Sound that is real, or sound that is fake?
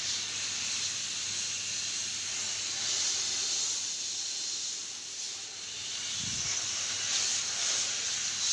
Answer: real